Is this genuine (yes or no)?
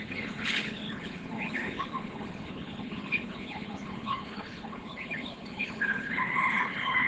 no